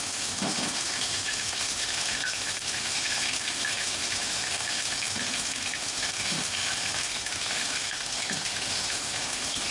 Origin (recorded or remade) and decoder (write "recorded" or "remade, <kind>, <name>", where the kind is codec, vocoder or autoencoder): remade, autoencoder, DAC-VAE